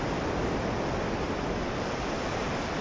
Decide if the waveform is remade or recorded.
recorded